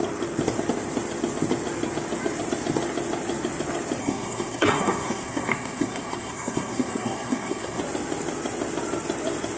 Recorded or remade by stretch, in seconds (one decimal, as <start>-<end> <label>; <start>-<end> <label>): 0.0-4.0 recorded; 4.0-7.8 remade; 7.8-9.6 recorded